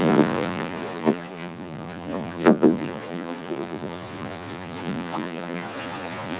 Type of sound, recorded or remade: remade